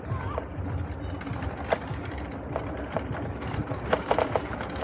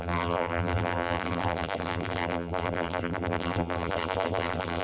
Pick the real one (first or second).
first